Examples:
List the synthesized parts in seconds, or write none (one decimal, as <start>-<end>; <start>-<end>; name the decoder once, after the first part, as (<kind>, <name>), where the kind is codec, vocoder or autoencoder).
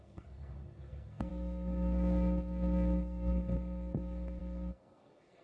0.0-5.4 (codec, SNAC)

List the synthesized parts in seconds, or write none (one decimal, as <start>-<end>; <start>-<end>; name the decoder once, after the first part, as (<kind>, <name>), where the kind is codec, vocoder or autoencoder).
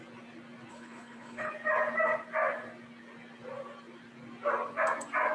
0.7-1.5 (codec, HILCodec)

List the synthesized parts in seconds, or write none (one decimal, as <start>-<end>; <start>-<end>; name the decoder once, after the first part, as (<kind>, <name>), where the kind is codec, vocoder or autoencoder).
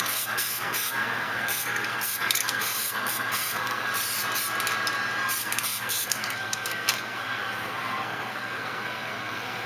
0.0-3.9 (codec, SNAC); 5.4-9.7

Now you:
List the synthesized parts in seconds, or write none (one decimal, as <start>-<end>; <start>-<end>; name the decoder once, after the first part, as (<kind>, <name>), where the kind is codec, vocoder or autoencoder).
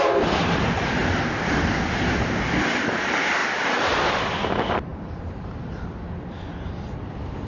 3.4-3.9 (vocoder, BigVGAN v2); 4.9-6.0